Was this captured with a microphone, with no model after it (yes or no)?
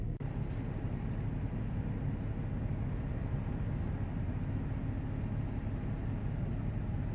yes